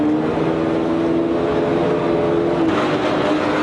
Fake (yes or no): no